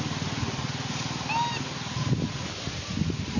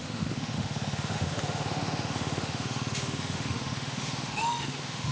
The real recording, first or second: first